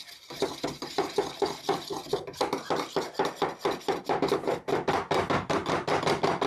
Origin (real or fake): real